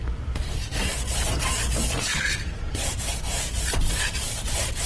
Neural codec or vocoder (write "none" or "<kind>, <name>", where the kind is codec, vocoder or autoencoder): none